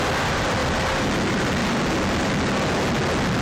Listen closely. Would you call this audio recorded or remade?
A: recorded